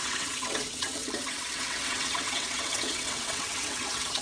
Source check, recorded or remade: remade